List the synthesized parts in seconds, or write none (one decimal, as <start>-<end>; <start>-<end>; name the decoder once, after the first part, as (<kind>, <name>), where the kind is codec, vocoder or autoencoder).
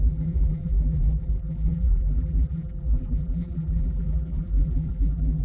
0.0-5.4 (vocoder, BigVGAN v2)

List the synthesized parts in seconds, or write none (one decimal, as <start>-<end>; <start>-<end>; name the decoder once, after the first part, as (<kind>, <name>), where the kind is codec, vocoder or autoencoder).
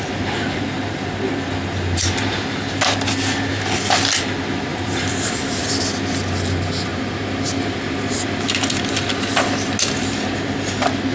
4.7-5.7 (vocoder, BigVGAN v2)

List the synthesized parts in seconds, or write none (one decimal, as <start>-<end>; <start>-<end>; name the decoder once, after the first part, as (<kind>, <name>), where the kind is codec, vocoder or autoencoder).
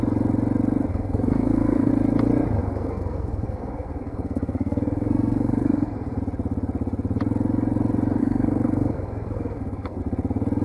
0.9-1.9 (codec, SNAC); 2.6-6.2; 8.2-10.0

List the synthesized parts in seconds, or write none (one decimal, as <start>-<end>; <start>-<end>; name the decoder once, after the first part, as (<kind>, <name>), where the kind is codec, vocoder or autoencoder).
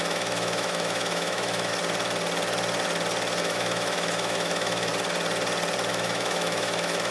0.0-1.7 (autoencoder, DAC-VAE); 3.4-4.9; 5.9-7.1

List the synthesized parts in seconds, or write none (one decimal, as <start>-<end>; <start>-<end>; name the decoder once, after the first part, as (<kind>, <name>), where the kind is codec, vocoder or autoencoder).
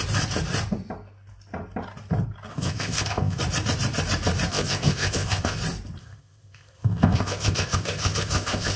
2.5-3.4 (codec, ZipCodec); 4.5-5.6; 6.0-8.8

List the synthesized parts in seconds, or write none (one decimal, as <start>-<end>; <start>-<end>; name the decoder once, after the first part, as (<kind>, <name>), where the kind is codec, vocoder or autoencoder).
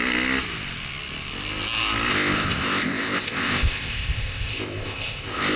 2.1-5.6 (codec, ZipCodec)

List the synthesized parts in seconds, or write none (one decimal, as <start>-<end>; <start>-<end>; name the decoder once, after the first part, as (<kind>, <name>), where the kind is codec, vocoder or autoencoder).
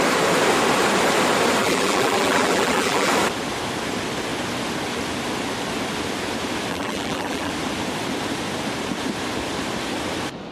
1.6-3.1 (vocoder, BigVGAN v2); 6.7-7.5